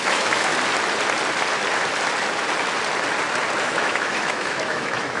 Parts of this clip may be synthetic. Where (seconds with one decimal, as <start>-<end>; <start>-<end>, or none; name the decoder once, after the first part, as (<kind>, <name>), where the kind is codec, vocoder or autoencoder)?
0.0-0.5 (autoencoder, DAC-VAE); 3.6-5.2